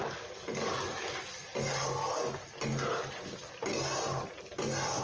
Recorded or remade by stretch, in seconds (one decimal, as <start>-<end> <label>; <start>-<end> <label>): 0.0-5.0 recorded